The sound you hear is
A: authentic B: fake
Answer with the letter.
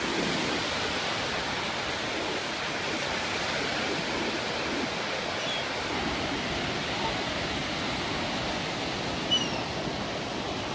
A